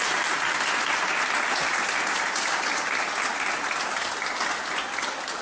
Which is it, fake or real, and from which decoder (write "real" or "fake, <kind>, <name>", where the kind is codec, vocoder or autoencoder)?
real